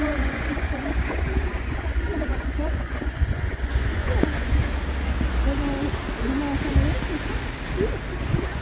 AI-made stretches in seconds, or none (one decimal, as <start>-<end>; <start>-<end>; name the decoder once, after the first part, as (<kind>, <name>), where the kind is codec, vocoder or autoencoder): 0.0-4.6 (vocoder, Vocos); 8.2-8.6